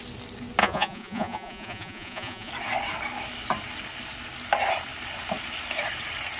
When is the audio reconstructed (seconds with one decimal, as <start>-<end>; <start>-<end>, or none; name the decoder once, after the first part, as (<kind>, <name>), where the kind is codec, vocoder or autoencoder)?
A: 0.6-2.5 (vocoder, Vocos)